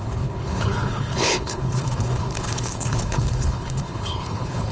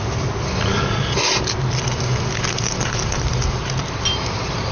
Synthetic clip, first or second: first